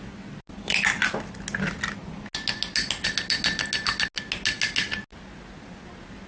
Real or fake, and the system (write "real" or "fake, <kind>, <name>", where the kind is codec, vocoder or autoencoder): real